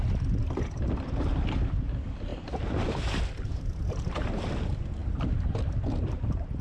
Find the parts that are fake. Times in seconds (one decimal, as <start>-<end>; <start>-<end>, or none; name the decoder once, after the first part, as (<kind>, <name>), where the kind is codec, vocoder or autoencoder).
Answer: 2.3-3.2 (vocoder, BigVGAN v2)